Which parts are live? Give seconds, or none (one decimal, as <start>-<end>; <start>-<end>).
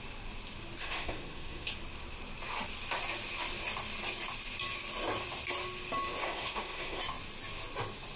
0.0-0.8; 1.7-6.2; 7.0-8.2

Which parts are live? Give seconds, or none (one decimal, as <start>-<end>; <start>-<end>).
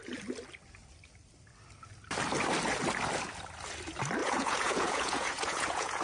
0.0-4.2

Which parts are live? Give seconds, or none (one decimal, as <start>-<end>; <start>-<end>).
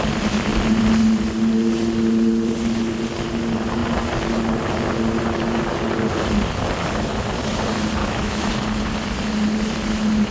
0.0-8.0; 8.5-10.3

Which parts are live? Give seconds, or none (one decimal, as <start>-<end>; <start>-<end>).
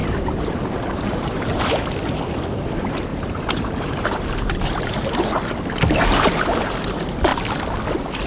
1.6-3.1; 5.5-8.3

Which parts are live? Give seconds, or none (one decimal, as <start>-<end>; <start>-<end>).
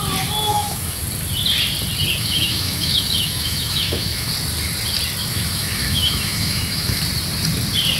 0.0-0.5; 1.0-2.1; 4.3-5.3; 7.0-8.0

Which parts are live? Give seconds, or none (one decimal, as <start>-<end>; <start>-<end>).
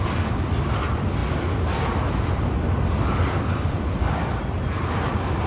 0.0-5.5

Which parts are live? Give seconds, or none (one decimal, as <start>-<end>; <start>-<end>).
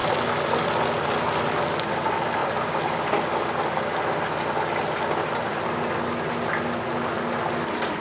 0.0-8.0